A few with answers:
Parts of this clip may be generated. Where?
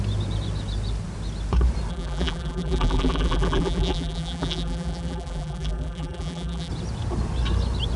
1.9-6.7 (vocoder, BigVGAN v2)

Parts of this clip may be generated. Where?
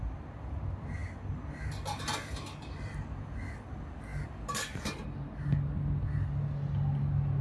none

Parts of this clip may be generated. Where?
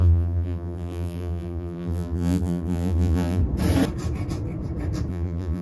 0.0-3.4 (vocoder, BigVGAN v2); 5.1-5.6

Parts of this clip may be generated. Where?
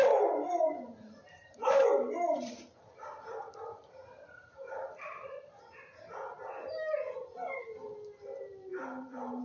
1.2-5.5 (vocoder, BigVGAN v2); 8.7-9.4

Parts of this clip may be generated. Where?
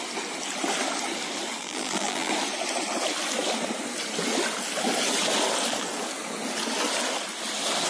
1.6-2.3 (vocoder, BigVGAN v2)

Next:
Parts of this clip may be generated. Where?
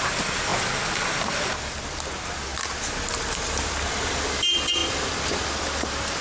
2.5-4.2 (vocoder, BigVGAN v2); 4.8-5.4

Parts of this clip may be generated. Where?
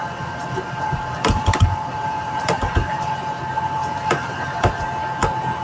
0.0-3.4 (vocoder, BigVGAN v2); 3.8-4.7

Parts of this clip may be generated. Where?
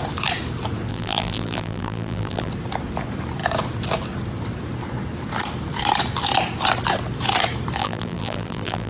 0.9-2.5 (vocoder, BigVGAN v2); 7.8-8.9